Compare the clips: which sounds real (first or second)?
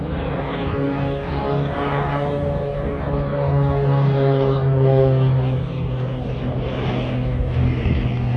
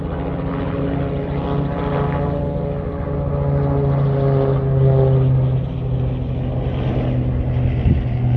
second